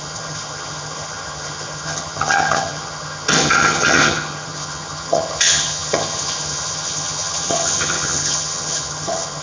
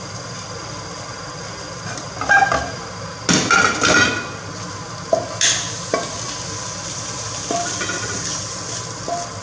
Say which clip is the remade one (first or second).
first